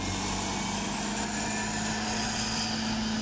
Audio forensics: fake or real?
real